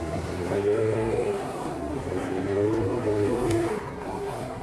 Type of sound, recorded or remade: remade